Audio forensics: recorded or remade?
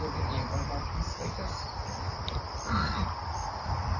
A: recorded